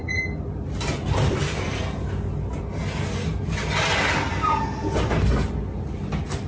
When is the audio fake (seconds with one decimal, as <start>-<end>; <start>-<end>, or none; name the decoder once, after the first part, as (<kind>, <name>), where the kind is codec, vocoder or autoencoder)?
none